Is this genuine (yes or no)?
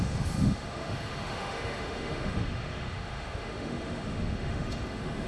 no